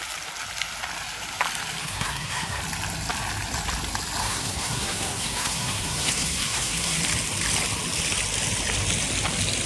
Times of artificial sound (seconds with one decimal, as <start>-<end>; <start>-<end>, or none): 1.8-2.6; 4.2-7.0